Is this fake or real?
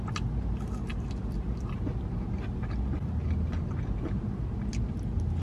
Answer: real